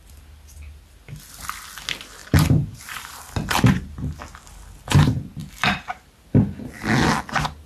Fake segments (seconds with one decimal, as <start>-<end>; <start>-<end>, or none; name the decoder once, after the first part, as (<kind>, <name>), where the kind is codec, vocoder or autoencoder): 2.2-3.2 (vocoder, BigVGAN v2)